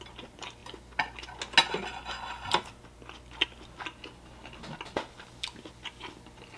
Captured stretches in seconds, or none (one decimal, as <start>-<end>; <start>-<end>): 0.0-6.6